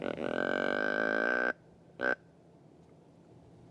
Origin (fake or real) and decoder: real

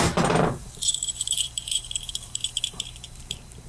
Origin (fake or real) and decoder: fake, vocoder, BigVGAN v2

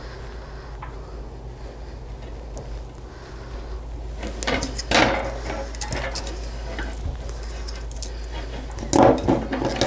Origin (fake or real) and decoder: real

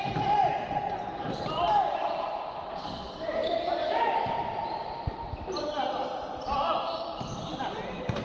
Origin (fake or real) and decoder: fake, vocoder, BigVGAN v2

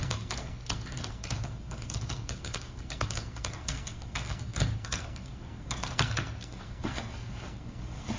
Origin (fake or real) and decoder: fake, codec, SNAC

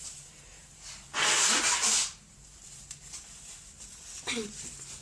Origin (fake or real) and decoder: real